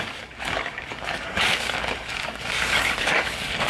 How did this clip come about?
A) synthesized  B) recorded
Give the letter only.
A